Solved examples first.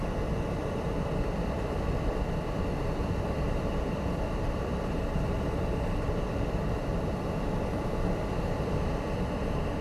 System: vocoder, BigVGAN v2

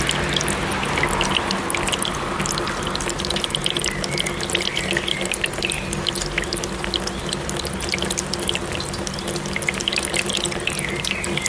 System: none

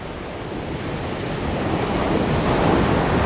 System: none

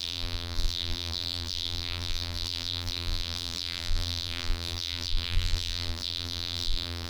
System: vocoder, BigVGAN v2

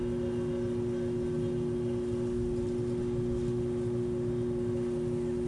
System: none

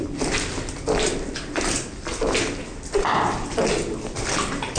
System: vocoder, BigVGAN v2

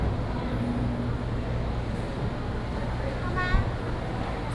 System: none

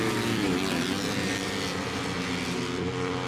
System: none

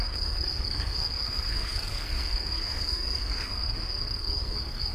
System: codec, SNAC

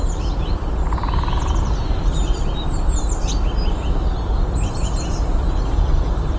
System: none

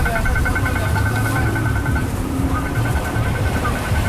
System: vocoder, BigVGAN v2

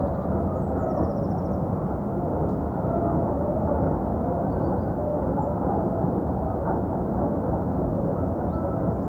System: none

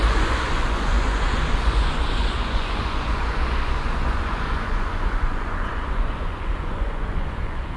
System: vocoder, Vocos